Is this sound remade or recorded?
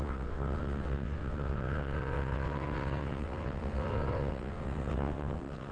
remade